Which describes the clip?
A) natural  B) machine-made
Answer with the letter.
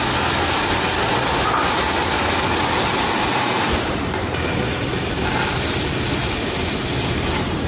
A